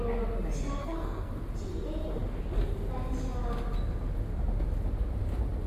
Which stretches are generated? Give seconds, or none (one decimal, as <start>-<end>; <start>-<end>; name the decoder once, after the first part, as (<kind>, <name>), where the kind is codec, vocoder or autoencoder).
0.8-1.3 (codec, SNAC)